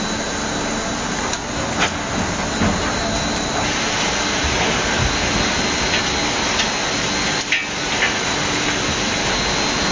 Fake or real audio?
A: real